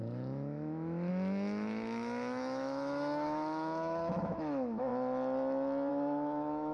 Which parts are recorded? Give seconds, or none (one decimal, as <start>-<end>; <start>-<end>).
4.9-5.9